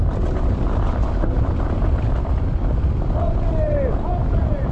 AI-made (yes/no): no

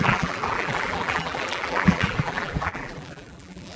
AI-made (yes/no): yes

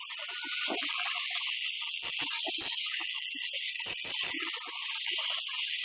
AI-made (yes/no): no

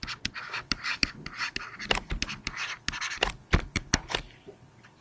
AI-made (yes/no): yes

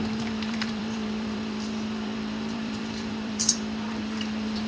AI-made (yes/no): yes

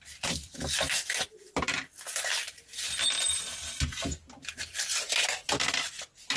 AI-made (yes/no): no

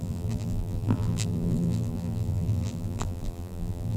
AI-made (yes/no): yes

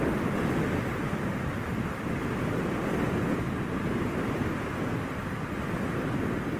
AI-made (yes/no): no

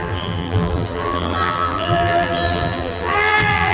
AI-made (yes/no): yes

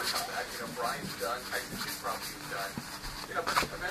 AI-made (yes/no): no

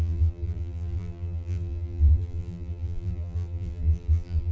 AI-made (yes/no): yes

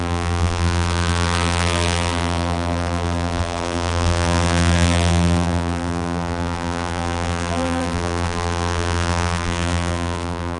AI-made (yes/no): yes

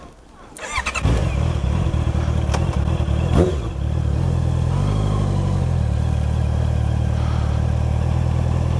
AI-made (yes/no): no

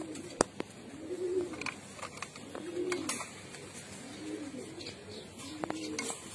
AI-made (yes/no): no